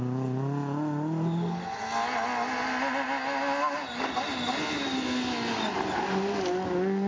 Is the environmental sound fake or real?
real